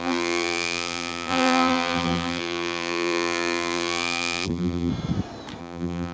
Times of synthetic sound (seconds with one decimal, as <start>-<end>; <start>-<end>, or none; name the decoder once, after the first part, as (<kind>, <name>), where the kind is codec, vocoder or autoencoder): 0.0-4.9 (vocoder, BigVGAN v2); 5.6-6.1